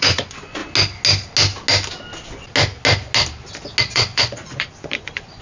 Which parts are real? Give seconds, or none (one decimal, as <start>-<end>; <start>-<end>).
0.6-3.8